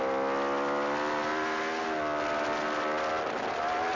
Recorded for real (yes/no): yes